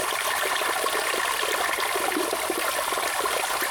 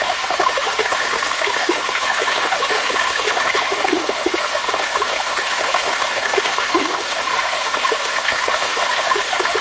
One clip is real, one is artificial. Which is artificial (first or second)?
second